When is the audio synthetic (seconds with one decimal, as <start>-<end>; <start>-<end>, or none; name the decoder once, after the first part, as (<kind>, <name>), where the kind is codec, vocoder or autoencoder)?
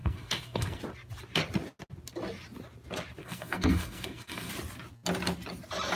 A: 0.0-0.8 (codec, SNAC); 3.2-4.5